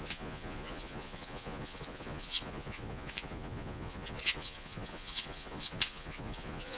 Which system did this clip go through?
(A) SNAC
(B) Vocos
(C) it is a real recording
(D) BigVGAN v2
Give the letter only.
B